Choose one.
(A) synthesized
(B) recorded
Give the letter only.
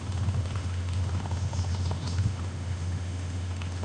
A